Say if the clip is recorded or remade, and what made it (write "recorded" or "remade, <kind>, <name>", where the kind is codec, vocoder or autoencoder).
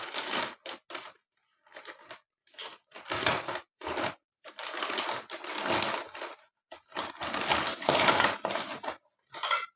recorded